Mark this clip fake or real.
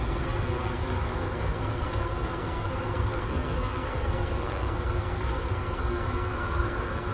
fake